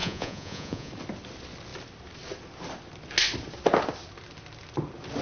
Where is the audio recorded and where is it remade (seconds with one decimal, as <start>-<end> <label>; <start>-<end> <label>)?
0.0-0.9 remade; 0.9-5.2 recorded